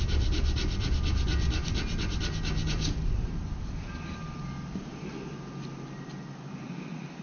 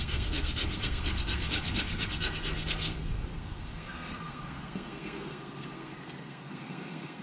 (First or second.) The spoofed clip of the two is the second